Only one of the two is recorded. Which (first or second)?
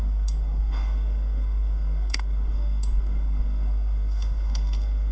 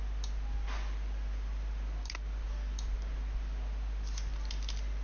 second